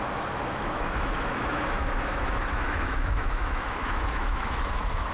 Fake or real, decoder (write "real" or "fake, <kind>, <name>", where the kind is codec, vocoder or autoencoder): fake, autoencoder, DAC-VAE